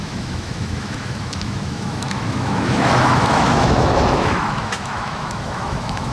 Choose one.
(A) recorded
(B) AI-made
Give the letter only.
B